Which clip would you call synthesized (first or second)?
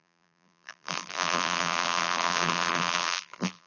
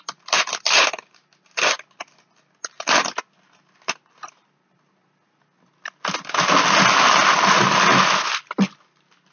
first